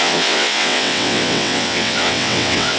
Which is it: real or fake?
fake